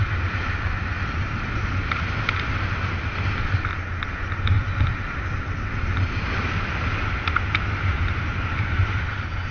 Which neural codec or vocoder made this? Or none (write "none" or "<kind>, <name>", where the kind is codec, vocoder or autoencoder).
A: none